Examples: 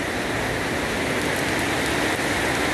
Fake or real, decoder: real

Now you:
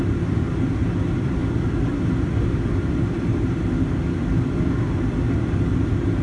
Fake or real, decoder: real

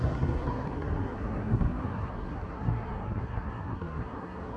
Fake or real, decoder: fake, codec, SNAC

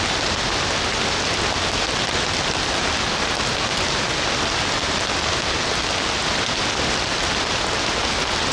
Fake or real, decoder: real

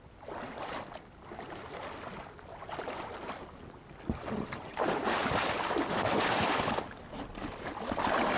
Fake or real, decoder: real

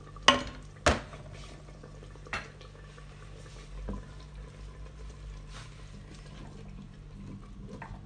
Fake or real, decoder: real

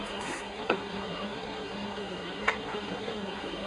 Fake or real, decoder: fake, codec, SNAC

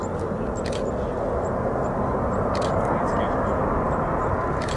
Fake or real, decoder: real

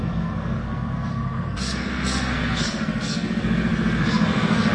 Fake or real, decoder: fake, codec, SNAC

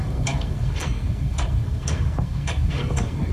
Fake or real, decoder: fake, codec, SNAC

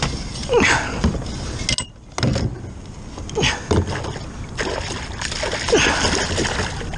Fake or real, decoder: real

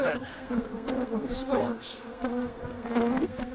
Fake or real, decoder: fake, codec, SNAC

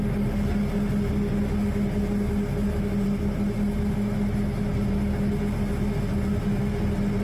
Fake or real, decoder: real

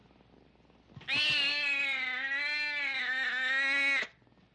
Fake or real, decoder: real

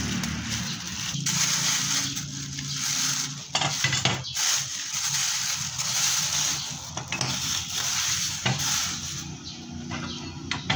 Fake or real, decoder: real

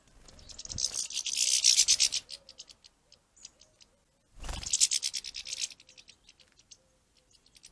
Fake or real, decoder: real